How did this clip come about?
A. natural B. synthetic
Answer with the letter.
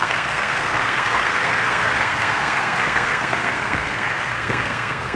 B